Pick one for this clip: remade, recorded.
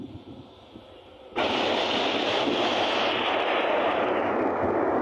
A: recorded